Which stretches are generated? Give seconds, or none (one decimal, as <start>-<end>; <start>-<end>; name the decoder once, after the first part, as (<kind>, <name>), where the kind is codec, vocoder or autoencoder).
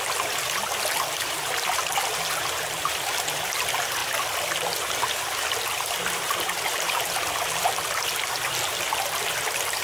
none